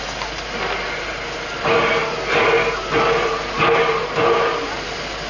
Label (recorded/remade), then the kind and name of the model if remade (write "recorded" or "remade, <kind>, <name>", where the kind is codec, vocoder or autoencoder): recorded